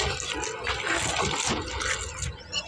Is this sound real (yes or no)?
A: yes